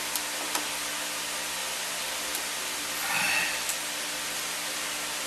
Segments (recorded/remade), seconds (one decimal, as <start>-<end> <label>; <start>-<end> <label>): 0.0-5.3 recorded